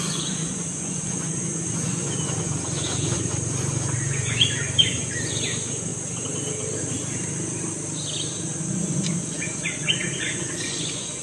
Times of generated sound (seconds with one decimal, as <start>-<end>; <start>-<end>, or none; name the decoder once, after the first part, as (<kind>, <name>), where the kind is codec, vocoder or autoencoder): 0.0-5.9 (vocoder, Vocos); 8.7-11.2